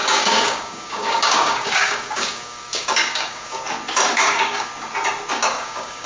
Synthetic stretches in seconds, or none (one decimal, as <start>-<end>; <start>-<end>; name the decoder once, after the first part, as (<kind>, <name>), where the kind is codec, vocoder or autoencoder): 0.0-3.6 (codec, DAC); 4.1-4.7; 5.3-6.1